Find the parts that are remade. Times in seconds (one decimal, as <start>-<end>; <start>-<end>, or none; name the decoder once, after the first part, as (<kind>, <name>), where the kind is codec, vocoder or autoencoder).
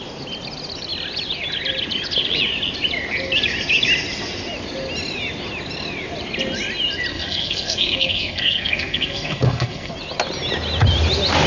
7.1-9.9 (codec, SNAC)